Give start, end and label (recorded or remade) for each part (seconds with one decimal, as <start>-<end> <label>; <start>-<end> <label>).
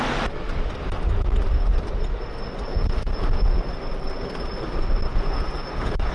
0.0-2.7 recorded; 2.7-3.6 remade; 3.6-5.1 recorded; 5.1-6.1 remade